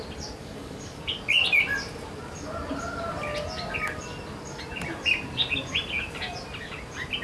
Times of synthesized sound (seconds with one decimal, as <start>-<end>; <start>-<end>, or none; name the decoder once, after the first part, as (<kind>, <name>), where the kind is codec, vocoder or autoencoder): 0.4-1.0 (codec, DAC)